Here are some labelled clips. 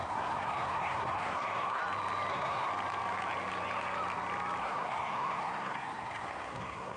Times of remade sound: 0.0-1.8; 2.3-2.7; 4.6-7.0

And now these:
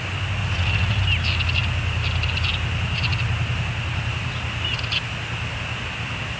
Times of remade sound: 0.4-1.0

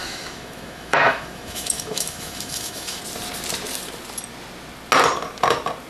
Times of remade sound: 0.0-3.0